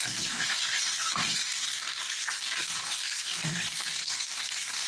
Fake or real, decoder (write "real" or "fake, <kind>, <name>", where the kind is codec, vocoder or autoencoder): fake, codec, DAC